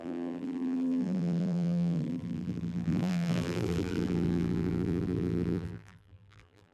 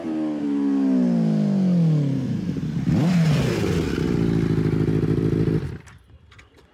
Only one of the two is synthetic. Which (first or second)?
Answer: first